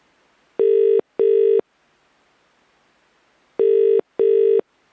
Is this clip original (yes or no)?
yes